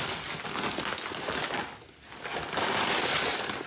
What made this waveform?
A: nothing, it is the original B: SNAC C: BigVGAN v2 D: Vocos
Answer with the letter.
A